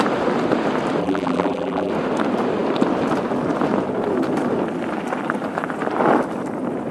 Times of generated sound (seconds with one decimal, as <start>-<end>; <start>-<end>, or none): 1.0-1.9